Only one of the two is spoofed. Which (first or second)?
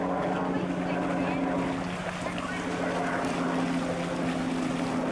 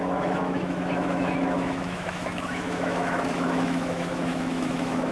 second